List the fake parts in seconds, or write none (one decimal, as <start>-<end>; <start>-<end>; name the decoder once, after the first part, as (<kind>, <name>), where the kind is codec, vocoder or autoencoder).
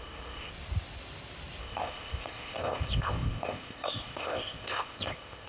0.0-0.5 (codec, ZipCodec); 1.6-5.5